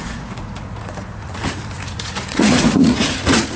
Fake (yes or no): yes